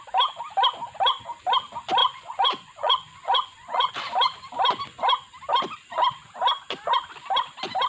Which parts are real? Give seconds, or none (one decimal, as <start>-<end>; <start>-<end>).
0.0-2.0; 3.9-7.9